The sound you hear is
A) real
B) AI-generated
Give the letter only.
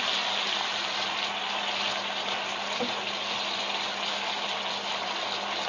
A